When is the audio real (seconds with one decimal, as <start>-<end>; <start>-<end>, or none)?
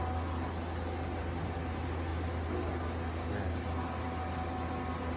0.0-5.2